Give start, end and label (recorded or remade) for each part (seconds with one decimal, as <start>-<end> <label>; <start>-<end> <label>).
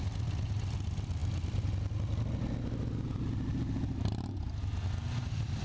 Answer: 0.0-5.6 recorded